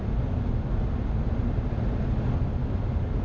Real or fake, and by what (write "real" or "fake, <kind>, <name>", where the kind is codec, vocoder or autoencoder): real